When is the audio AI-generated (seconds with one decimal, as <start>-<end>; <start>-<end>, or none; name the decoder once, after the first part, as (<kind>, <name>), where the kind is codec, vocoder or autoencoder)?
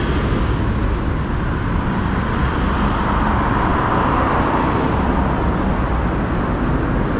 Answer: 0.8-2.4 (vocoder, BigVGAN v2)